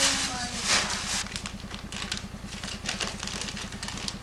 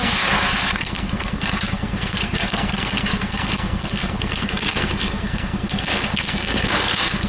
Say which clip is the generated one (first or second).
second